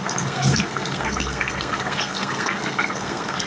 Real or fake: fake